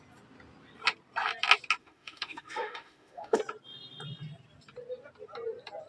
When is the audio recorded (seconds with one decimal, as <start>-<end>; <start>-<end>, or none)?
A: 0.0-1.8; 3.4-5.9

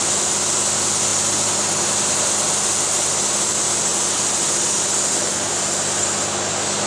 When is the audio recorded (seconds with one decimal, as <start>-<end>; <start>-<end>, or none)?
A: 0.0-6.9

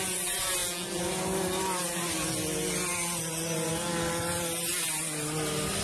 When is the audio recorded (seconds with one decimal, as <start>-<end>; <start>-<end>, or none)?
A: 0.0-5.8

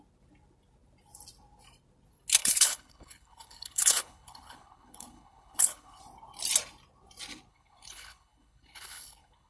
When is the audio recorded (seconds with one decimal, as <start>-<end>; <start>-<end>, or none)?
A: 0.0-2.4; 6.0-7.5

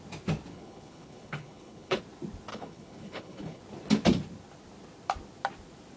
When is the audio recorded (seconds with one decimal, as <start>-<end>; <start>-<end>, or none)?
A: 0.0-0.5; 2.0-2.5; 3.6-6.0

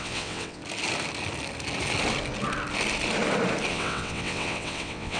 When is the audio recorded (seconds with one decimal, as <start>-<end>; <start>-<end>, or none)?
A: 0.6-3.7